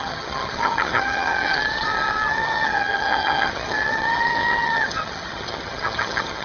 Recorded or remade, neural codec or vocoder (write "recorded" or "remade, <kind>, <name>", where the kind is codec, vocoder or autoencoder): remade, vocoder, HiFi-GAN